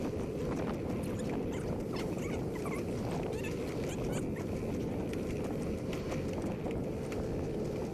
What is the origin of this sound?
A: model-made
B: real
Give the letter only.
B